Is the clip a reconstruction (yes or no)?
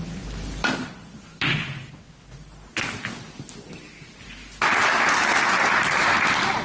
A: no